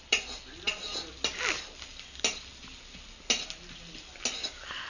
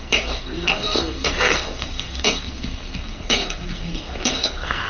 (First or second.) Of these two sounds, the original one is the first